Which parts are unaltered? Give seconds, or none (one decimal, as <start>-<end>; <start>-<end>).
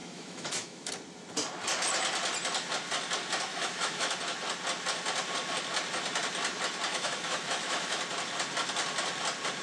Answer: 0.9-3.5; 4.1-6.9; 8.0-9.6